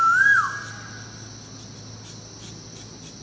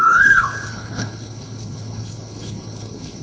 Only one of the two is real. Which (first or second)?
first